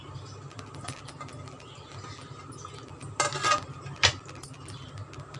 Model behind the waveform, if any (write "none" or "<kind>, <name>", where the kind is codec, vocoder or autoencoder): none